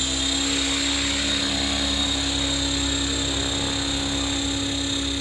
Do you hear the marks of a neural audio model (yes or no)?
no